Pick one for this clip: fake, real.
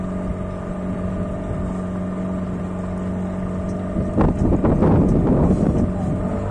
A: real